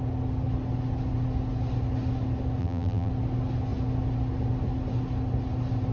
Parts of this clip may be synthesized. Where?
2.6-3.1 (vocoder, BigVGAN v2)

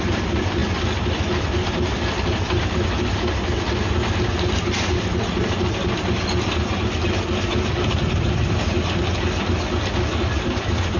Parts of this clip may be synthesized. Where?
none

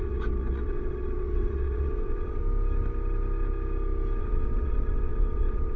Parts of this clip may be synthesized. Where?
0.0-2.4 (vocoder, WaveNeXt); 4.2-5.8

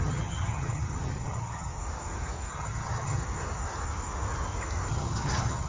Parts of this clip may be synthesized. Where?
0.0-1.7 (vocoder, HiFi-GAN); 2.5-3.2; 4.9-5.7

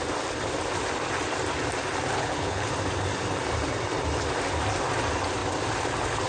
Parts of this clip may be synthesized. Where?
2.1-2.7 (codec, HILCodec)

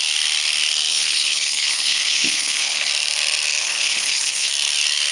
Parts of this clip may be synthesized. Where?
0.9-2.9 (codec, HILCodec); 3.6-4.5